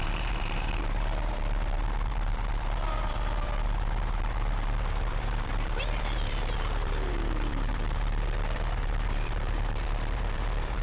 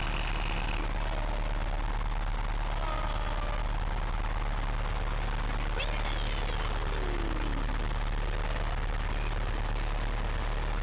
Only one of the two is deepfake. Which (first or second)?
first